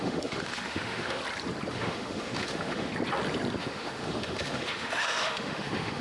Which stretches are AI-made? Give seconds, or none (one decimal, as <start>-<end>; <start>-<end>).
0.0-1.2; 1.7-2.9; 3.6-6.0